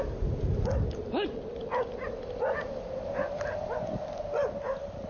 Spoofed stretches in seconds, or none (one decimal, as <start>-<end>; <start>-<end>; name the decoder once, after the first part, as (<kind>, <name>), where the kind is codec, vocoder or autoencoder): none